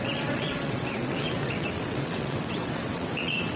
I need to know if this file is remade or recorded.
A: remade